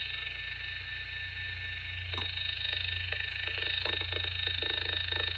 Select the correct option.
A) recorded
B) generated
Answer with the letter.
A